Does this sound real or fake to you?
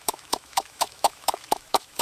fake